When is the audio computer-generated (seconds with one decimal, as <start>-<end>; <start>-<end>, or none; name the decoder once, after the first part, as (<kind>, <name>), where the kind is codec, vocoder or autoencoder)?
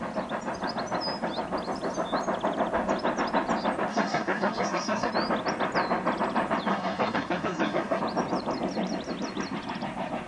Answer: 3.9-5.1 (codec, SNAC); 6.7-8.0